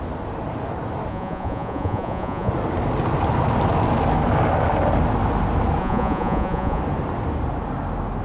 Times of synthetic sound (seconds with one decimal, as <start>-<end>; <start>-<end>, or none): 1.1-2.5; 5.8-6.8